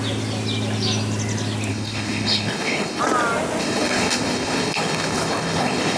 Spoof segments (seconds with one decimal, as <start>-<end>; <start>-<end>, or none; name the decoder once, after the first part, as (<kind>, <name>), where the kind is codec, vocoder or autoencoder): 1.7-3.0 (codec, HILCodec); 3.6-6.0